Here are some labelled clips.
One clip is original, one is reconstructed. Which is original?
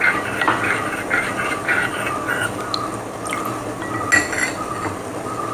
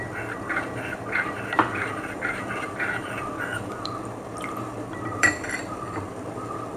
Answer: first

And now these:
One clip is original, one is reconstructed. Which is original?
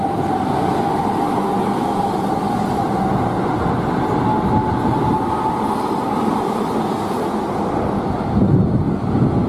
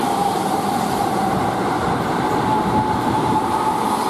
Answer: first